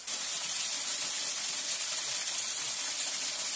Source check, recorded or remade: recorded